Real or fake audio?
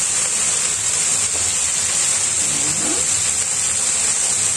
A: real